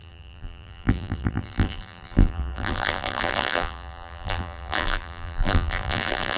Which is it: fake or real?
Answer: fake